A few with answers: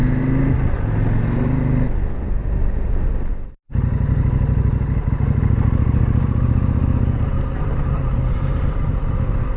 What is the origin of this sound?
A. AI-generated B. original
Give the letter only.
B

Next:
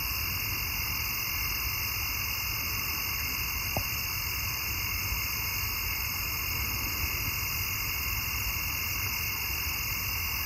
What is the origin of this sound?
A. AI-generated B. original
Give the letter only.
B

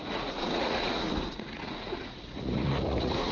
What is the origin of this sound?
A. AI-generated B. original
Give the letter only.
A